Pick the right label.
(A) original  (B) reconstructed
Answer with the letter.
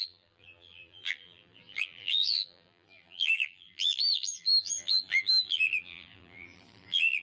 B